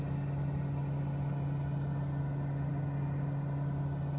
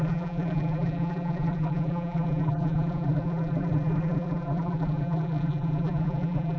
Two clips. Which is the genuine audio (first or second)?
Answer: first